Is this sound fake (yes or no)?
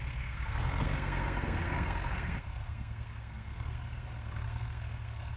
yes